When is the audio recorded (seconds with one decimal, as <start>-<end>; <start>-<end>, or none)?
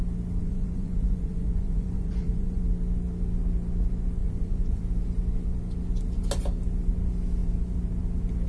0.0-0.4; 2.6-4.2; 4.8-8.5